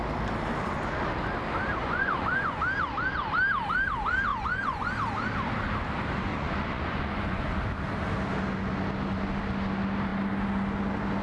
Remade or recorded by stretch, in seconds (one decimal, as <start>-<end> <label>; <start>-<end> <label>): 0.0-1.8 recorded; 1.8-2.6 remade; 2.6-4.3 recorded; 4.3-4.9 remade; 4.9-6.3 recorded; 6.3-7.6 remade; 7.6-11.2 recorded